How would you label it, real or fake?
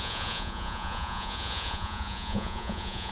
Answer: fake